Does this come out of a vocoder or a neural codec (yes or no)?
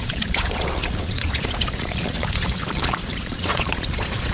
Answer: yes